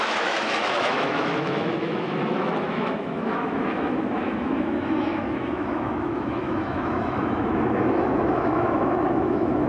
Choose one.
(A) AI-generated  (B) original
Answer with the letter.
A